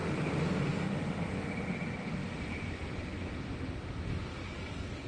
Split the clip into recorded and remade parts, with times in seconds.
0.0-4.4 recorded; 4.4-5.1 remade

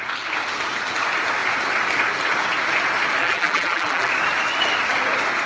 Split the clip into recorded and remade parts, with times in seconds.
0.0-3.2 recorded; 3.2-4.1 remade; 4.1-5.5 recorded

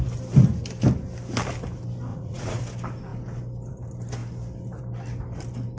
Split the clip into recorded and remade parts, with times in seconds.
0.0-2.1 recorded; 2.1-2.6 remade; 2.6-5.8 recorded